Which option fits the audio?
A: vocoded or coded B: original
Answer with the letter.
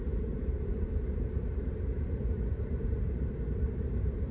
A